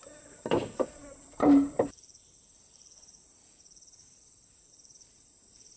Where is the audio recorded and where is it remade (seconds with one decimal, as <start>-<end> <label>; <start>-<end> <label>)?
0.0-5.8 remade